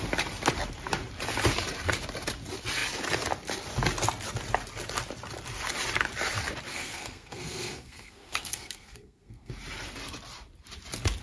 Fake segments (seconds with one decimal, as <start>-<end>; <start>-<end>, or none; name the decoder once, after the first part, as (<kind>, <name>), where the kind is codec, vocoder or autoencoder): 6.7-9.5 (codec, SNAC)